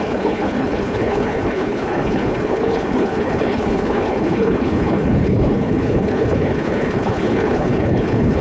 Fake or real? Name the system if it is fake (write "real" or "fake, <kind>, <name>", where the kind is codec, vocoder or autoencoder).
fake, codec, HILCodec